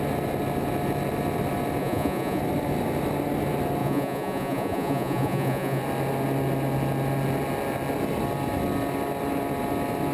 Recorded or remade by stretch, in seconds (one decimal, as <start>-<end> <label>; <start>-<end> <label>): 0.0-1.8 recorded; 1.8-2.4 remade; 2.4-3.8 recorded; 3.8-5.8 remade; 5.8-10.1 recorded